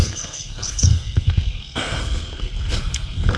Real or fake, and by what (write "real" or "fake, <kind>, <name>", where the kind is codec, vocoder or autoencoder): fake, codec, SNAC